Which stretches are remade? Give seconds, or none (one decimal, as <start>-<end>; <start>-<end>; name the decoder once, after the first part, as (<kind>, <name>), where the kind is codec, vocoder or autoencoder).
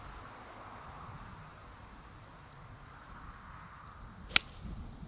none